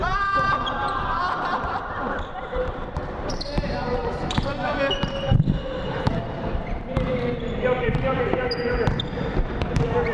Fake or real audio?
fake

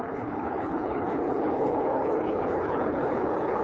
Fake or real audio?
fake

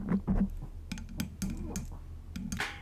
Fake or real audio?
real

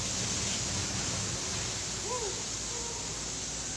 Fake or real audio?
real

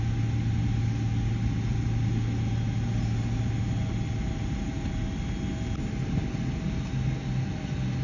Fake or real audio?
real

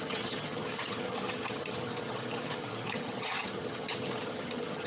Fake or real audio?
fake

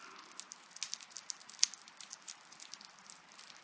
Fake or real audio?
real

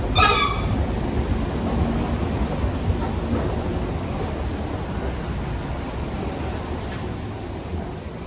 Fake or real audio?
real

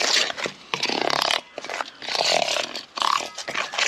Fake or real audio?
real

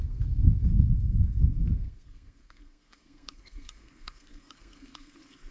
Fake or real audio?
fake